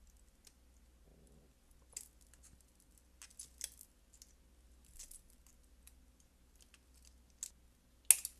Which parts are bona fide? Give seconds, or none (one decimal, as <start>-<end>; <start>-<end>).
0.0-8.4